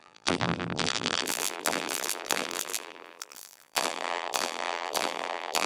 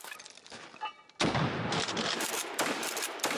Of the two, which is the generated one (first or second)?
first